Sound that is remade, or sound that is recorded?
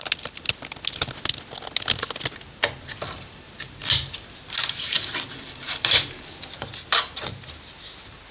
recorded